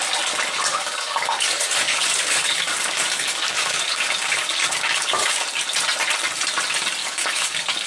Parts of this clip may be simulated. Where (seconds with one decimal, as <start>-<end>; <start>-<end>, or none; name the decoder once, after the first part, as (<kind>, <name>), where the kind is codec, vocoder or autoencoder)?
0.7-5.4 (codec, DAC); 7.0-7.9